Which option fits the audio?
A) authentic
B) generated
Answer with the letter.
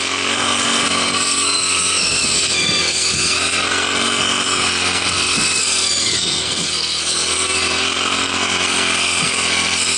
B